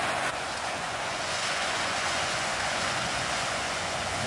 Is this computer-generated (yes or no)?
yes